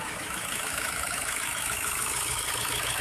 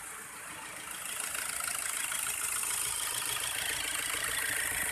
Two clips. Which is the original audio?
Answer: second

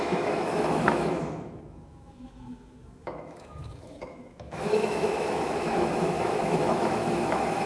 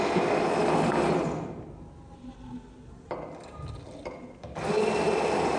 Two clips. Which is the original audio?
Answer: second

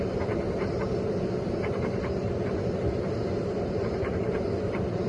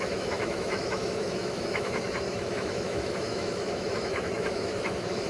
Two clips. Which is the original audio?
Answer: first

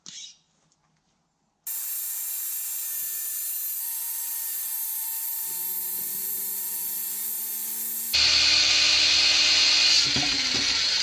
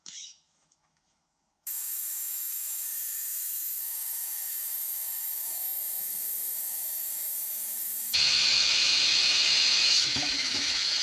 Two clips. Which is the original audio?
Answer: first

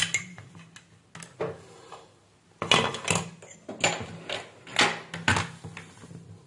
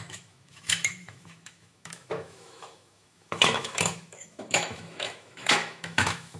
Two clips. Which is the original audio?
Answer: first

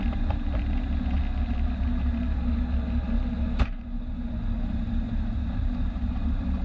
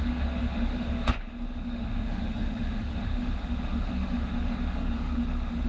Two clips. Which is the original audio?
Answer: first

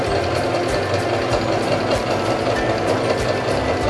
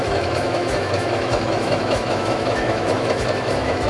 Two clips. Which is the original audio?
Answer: first